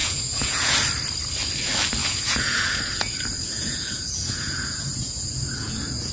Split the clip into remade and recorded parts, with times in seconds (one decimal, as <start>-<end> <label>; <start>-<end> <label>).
0.0-0.8 remade; 0.8-2.0 recorded; 2.0-6.1 remade